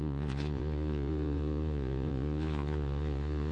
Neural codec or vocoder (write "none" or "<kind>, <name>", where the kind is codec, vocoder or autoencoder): vocoder, Vocos